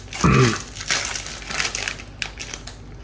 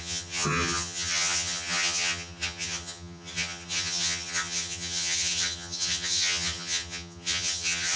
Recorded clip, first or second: first